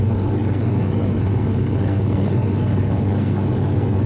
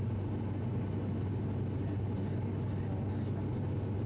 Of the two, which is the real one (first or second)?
second